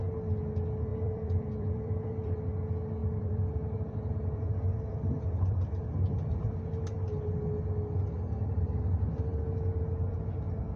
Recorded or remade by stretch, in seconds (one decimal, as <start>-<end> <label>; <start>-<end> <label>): 0.0-0.9 recorded; 0.9-2.4 remade; 2.4-3.0 recorded; 3.0-5.7 remade; 5.7-10.8 recorded